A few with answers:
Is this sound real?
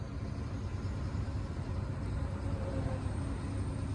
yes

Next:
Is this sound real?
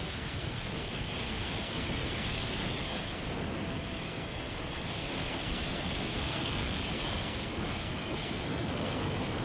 no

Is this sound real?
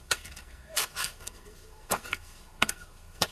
no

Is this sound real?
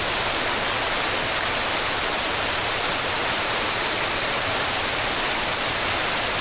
yes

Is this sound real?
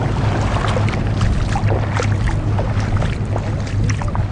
yes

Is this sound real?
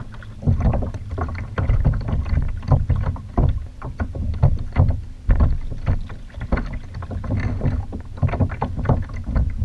yes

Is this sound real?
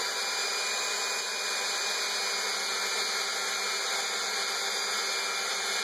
yes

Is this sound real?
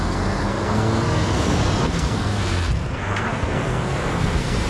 no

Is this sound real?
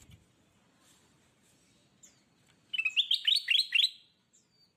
yes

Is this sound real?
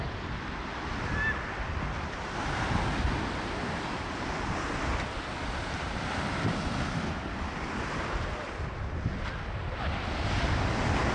yes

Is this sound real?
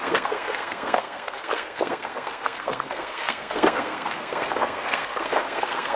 no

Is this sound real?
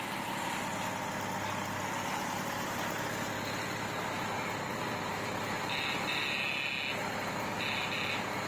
yes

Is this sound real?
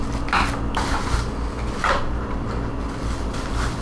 yes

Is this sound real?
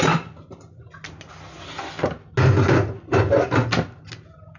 yes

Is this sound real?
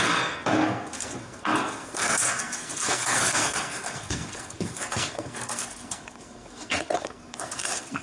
no